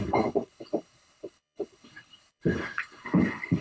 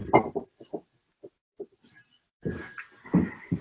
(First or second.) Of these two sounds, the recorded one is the second